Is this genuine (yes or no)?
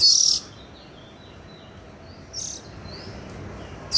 yes